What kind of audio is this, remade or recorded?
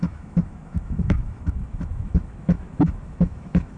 remade